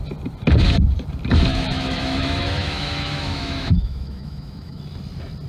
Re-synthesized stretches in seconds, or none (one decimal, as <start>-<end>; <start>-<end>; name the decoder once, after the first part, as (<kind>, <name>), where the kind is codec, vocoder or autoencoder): 1.5-4.8 (autoencoder, DAC-VAE)